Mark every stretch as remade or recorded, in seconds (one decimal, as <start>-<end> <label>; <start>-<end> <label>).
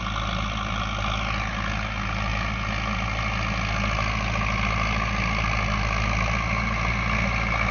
0.0-7.7 recorded